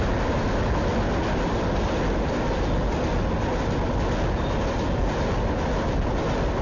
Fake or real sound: real